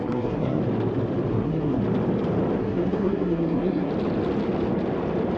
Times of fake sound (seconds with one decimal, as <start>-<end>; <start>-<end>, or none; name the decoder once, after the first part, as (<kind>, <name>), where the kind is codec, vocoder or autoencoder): 0.0-0.6 (codec, SNAC); 1.3-1.8; 2.6-3.9